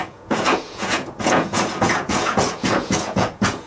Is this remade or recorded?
remade